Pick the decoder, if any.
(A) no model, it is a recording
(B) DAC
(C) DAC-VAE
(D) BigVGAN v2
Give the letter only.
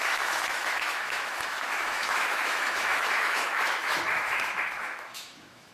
C